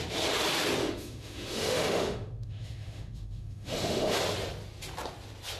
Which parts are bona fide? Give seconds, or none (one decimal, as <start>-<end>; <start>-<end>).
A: 0.0-0.8; 4.2-5.6